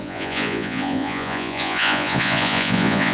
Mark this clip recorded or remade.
remade